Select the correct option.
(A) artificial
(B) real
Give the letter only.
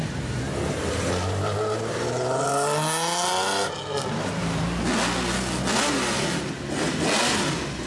B